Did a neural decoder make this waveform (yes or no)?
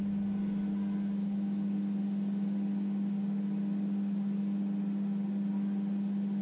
no